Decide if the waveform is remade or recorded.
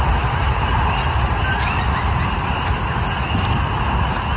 recorded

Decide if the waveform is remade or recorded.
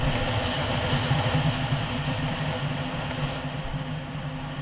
recorded